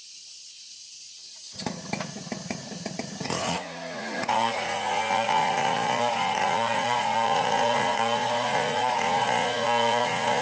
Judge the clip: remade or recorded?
remade